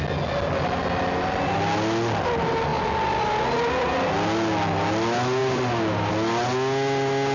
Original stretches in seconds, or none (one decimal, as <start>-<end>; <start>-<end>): 0.0-5.4; 6.1-7.3